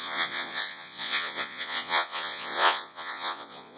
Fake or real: fake